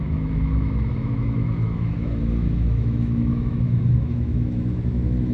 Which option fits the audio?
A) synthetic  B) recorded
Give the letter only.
A